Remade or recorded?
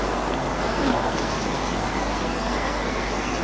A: remade